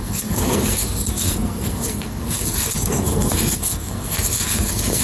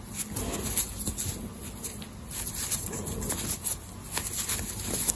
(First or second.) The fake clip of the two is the first